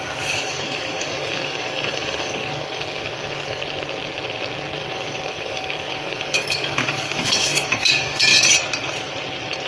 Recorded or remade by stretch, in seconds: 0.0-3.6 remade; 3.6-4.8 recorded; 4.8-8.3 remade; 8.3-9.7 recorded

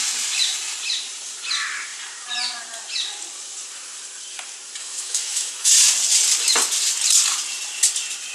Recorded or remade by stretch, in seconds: 0.0-4.8 recorded; 4.8-5.7 remade; 5.7-8.3 recorded

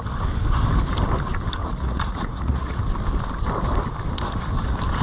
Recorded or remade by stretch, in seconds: 0.0-1.6 recorded; 1.6-2.8 remade; 2.8-5.0 recorded

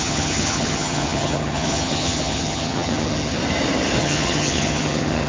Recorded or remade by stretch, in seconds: 0.0-3.4 remade; 3.4-4.0 recorded; 4.0-5.3 remade

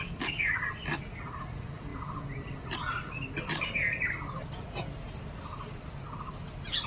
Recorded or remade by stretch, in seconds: 0.0-6.9 recorded

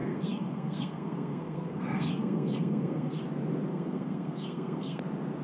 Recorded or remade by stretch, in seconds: 0.0-3.2 remade; 3.2-3.7 recorded; 3.7-5.0 remade; 5.0-5.4 recorded

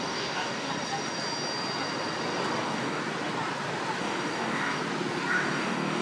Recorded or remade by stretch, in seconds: 0.0-0.7 remade; 0.7-2.6 recorded; 2.6-3.0 remade; 3.0-4.0 recorded; 4.0-4.8 remade; 4.8-5.3 recorded; 5.3-6.0 remade

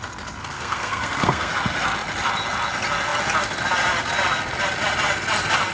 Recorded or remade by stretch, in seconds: 0.0-0.4 recorded; 0.4-1.5 remade; 1.5-5.7 recorded